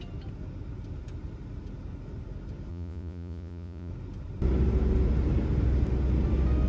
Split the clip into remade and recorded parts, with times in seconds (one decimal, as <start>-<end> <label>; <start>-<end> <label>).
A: 0.0-2.7 recorded; 2.7-3.9 remade; 3.9-6.7 recorded